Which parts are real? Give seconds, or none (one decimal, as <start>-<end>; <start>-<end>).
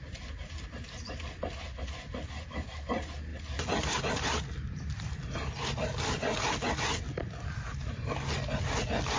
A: 0.0-9.2